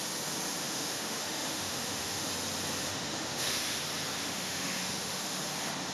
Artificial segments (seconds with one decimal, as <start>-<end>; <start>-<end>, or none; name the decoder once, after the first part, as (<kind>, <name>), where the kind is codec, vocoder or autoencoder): 0.6-2.3 (autoencoder, DAC-VAE); 2.8-3.8; 4.2-5.4